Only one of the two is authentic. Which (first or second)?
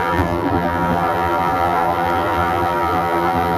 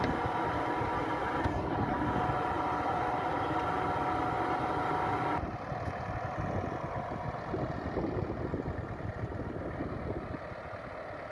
second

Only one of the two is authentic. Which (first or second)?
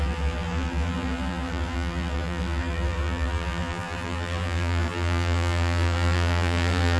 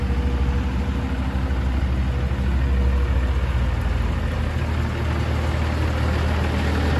second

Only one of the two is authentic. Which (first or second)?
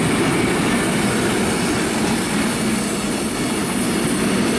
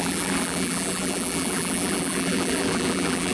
first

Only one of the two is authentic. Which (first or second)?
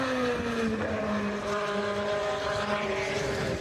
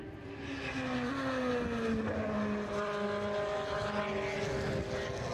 second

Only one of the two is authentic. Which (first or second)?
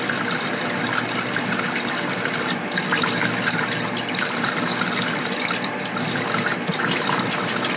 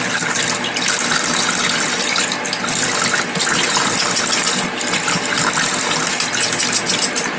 second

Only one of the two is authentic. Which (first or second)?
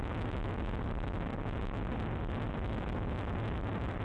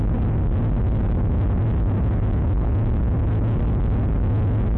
second